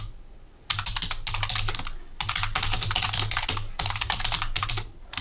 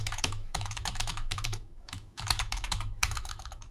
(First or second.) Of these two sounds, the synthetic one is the second